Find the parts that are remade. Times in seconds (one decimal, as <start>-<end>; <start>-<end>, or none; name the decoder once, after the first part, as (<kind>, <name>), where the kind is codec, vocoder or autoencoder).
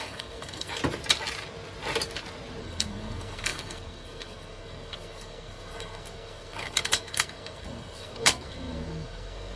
0.0-0.8 (codec, SNAC); 2.6-9.6